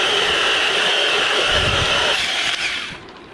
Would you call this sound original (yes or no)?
no